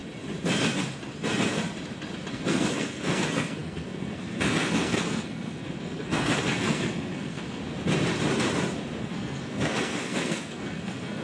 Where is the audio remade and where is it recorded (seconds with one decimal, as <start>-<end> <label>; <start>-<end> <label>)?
0.0-2.3 recorded; 2.3-7.6 remade; 7.6-9.0 recorded; 9.0-11.2 remade